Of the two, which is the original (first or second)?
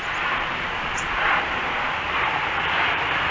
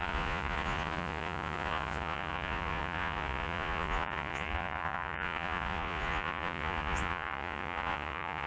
first